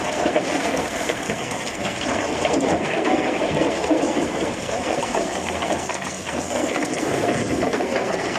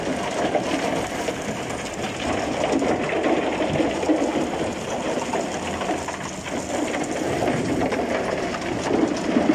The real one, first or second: second